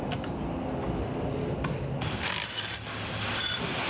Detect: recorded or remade recorded